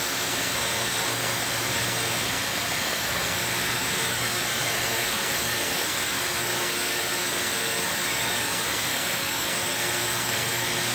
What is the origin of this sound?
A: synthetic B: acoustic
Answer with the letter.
A